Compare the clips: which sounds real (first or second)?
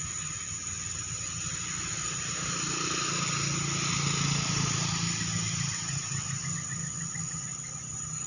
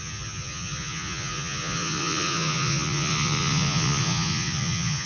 first